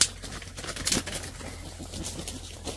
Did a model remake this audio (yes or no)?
no